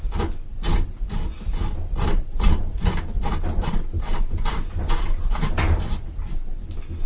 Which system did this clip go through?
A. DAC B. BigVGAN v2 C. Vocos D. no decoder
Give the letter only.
D